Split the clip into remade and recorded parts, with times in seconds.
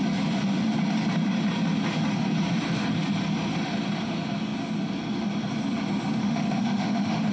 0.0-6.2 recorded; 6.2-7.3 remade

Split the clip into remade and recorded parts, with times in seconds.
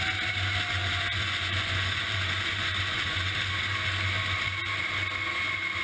0.0-0.8 recorded; 0.8-3.3 remade; 3.3-5.8 recorded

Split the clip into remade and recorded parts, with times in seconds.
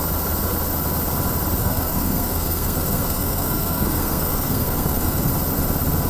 0.0-1.6 recorded; 1.6-5.3 remade; 5.3-6.1 recorded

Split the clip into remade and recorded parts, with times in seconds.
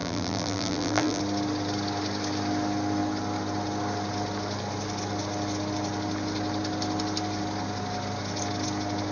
0.0-1.2 remade; 1.2-9.1 recorded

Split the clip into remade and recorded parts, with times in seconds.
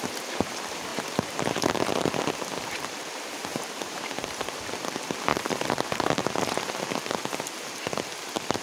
0.0-0.9 recorded; 0.9-2.2 remade; 2.2-3.5 recorded; 3.5-4.6 remade; 4.6-5.3 recorded; 5.3-6.8 remade; 6.8-8.6 recorded